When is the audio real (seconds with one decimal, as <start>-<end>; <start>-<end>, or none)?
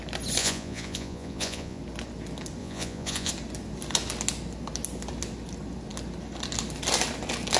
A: 0.0-0.4; 1.8-2.6; 3.3-7.6